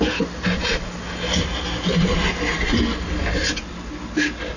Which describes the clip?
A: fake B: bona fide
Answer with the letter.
B